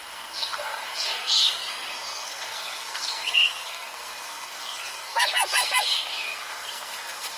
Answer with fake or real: fake